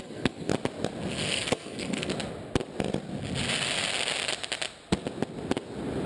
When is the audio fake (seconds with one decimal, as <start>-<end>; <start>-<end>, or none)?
0.0-0.5; 1.1-2.1